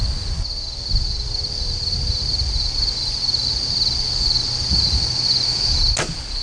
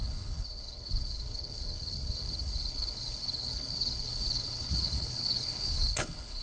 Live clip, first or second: first